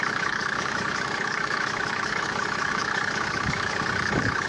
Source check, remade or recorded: remade